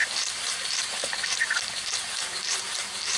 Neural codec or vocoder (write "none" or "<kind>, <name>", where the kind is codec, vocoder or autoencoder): vocoder, BigVGAN v2